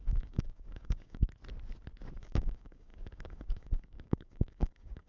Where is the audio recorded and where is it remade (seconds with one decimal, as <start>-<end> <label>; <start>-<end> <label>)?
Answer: 0.0-1.2 remade; 1.2-2.2 recorded; 2.2-5.1 remade